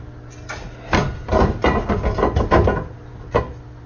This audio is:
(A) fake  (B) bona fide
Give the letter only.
B